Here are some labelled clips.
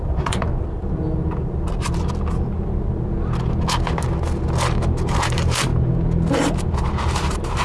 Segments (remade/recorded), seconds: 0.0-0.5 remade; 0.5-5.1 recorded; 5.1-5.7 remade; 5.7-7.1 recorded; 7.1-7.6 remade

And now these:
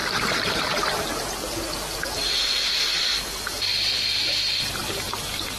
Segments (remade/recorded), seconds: 0.0-0.5 recorded; 0.5-1.4 remade; 1.4-2.4 recorded; 2.4-3.1 remade; 3.1-4.7 recorded; 4.7-5.6 remade

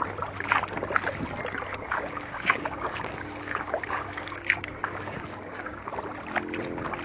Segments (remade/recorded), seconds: 0.0-1.7 recorded; 1.7-5.9 remade; 5.9-7.0 recorded

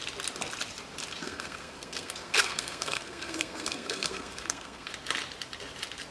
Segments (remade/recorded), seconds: 0.0-1.2 recorded; 1.2-4.9 remade; 4.9-6.1 recorded

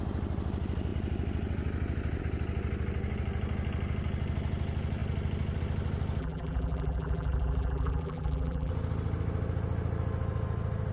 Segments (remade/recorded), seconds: 0.0-6.2 recorded; 6.2-8.7 remade; 8.7-10.9 recorded

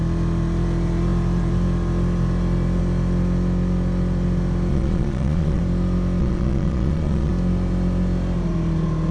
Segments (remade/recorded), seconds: 0.0-4.7 recorded; 4.7-5.6 remade; 5.6-6.2 recorded; 6.2-7.3 remade; 7.3-9.1 recorded

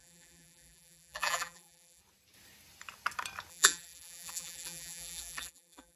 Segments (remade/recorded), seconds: 0.0-2.0 remade; 2.0-3.5 recorded; 3.5-6.0 remade

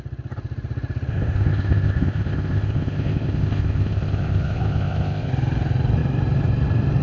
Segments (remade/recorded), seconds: 0.0-1.1 recorded; 1.1-5.3 remade; 5.3-7.0 recorded